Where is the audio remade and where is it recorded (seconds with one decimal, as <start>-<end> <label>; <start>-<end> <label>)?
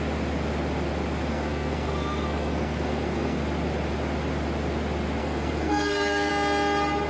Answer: 0.0-1.3 recorded; 1.3-3.4 remade; 3.4-5.2 recorded; 5.2-6.3 remade; 6.3-7.1 recorded